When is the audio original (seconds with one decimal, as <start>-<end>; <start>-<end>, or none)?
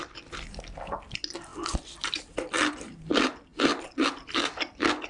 0.0-5.1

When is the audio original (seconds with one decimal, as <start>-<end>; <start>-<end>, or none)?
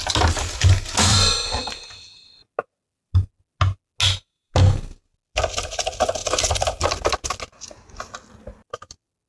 0.0-1.1; 1.6-6.2; 6.8-9.3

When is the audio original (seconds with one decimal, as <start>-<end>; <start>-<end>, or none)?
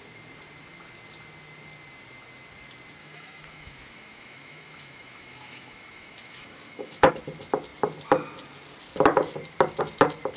0.0-3.0; 7.1-10.4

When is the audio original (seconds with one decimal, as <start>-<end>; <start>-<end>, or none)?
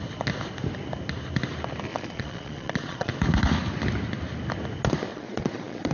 0.0-1.9; 3.1-5.1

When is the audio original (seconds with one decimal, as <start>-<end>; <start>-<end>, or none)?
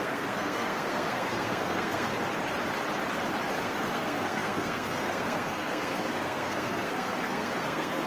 2.1-3.6